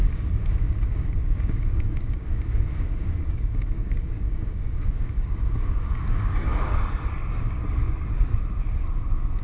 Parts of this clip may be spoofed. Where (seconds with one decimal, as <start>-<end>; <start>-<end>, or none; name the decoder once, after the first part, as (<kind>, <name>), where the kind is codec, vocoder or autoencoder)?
0.0-6.5 (codec, DAC); 7.3-8.3